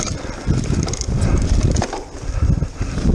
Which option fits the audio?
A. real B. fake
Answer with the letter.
B